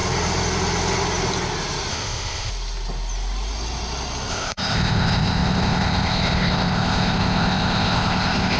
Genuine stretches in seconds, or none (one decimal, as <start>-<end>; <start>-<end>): 0.0-1.9; 2.5-4.3